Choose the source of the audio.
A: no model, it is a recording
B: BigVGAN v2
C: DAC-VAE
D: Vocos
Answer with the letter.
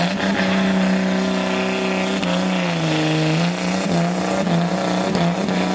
A